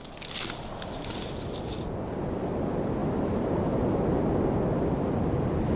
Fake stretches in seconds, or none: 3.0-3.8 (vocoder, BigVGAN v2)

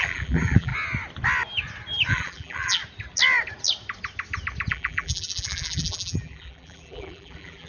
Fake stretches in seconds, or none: 0.0-0.7 (vocoder, BigVGAN v2); 2.1-2.8; 4.7-7.7

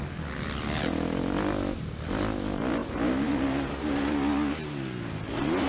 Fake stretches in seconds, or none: 2.8-3.3 (vocoder, BigVGAN v2)

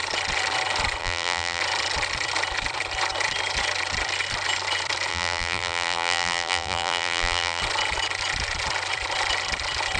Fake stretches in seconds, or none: 1.0-1.6 (vocoder, BigVGAN v2); 5.1-7.6

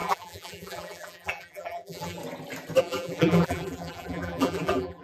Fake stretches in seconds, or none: 0.0-2.2 (vocoder, BigVGAN v2); 2.8-5.0

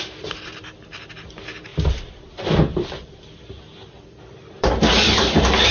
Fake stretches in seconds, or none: 1.7-2.3 (vocoder, BigVGAN v2); 2.7-4.7

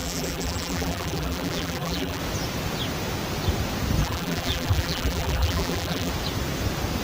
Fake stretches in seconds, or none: 0.0-2.2 (vocoder, BigVGAN v2); 4.0-6.1

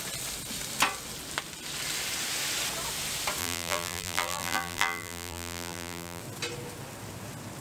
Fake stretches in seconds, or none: 3.4-6.2 (vocoder, BigVGAN v2)